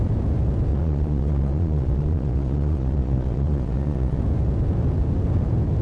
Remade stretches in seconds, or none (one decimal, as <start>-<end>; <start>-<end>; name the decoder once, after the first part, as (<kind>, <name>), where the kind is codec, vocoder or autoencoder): 0.7-4.2 (vocoder, Vocos)